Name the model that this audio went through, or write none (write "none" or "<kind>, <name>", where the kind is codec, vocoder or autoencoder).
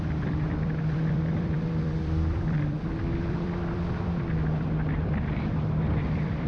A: vocoder, BigVGAN v2